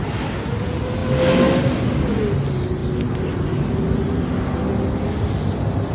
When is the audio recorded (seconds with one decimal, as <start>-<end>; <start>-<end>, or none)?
0.0-5.9